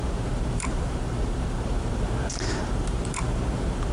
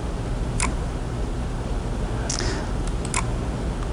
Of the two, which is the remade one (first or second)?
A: first